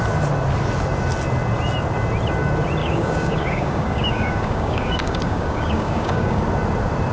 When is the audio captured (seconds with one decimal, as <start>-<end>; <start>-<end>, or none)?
0.0-2.8; 6.4-7.1